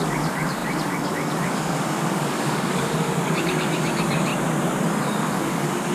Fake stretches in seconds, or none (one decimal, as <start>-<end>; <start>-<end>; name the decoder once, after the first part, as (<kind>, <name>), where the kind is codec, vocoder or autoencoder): 0.0-4.3 (codec, DAC); 5.0-5.9